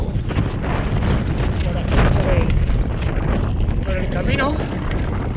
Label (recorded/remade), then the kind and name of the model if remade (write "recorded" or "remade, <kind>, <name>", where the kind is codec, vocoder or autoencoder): recorded